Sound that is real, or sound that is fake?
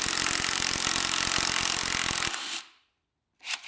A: real